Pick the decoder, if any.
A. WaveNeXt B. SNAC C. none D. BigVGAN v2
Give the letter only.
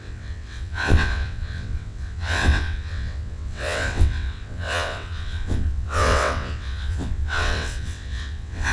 A